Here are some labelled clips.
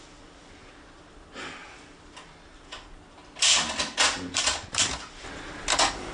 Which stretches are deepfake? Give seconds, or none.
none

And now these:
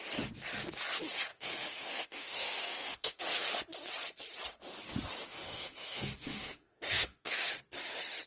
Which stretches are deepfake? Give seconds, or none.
1.3-3.2; 5.3-7.5

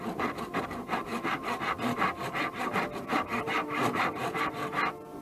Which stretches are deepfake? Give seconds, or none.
0.0-1.1; 3.1-5.2

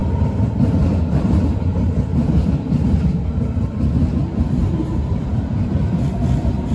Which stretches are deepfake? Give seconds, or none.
0.0-4.0; 4.6-5.8

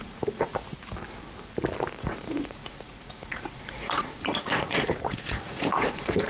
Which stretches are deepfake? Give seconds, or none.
0.0-0.6; 2.0-6.3